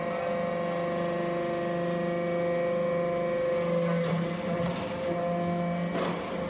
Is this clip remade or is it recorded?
recorded